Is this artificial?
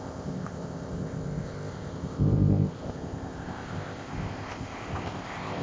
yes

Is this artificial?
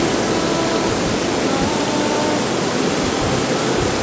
no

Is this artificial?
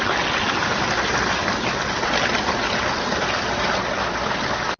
no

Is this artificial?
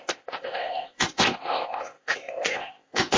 yes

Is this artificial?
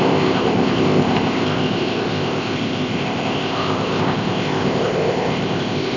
yes